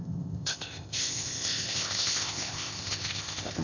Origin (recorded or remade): remade